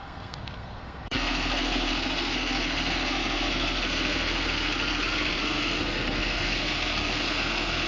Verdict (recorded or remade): remade